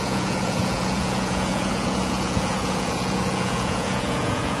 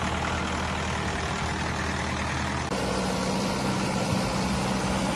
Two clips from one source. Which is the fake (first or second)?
first